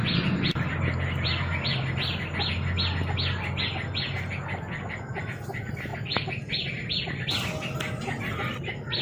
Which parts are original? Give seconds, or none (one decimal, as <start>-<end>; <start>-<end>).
0.0-9.0